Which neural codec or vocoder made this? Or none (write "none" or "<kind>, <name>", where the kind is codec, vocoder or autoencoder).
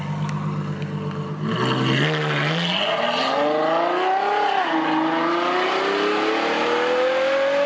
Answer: none